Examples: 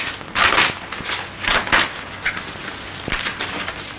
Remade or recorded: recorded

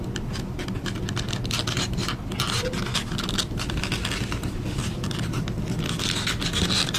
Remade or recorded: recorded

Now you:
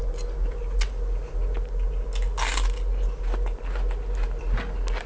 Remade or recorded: recorded